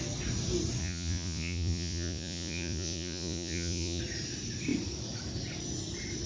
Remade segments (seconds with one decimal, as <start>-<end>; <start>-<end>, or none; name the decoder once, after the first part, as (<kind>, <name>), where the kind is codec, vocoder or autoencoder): 0.8-4.0 (vocoder, Vocos)